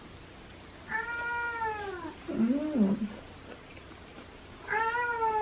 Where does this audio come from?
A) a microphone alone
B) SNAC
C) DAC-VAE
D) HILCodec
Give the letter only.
A